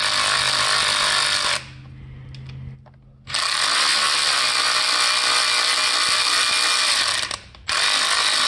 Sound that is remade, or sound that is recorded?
recorded